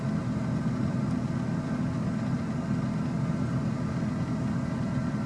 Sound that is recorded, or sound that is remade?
recorded